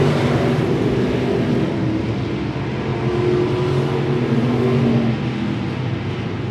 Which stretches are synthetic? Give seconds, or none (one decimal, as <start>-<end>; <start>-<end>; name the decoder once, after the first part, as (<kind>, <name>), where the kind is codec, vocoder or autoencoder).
none